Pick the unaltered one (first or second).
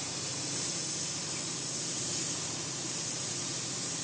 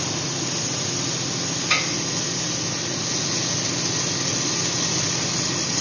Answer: second